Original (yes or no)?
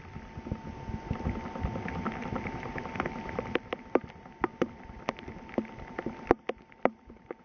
yes